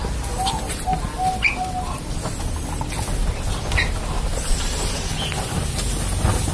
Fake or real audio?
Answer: real